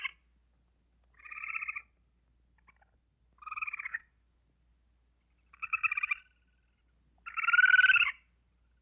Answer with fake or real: real